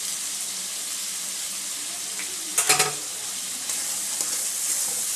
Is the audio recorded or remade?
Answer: recorded